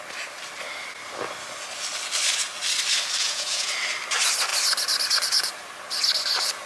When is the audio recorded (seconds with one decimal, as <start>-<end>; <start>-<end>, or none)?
0.0-3.2; 3.7-6.7